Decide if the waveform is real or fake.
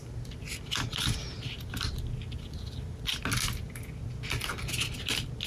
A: real